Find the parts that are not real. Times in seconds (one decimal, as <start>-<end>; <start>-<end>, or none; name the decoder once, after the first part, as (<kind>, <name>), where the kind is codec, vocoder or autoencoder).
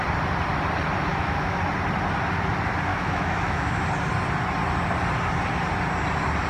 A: 1.1-1.6 (autoencoder, DAC-VAE); 2.9-3.8